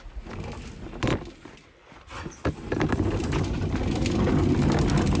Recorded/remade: recorded